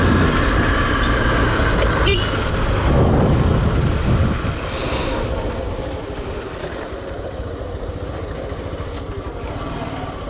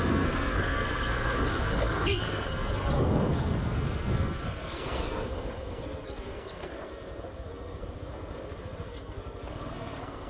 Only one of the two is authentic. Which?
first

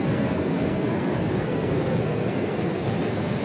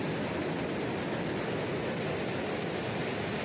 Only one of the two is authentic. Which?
second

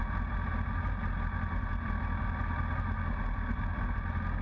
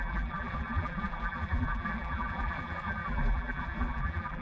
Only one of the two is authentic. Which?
first